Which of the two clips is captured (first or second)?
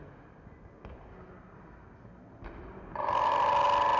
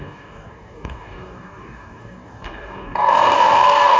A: first